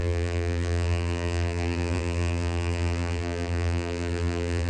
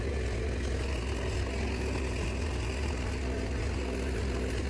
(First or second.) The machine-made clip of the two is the first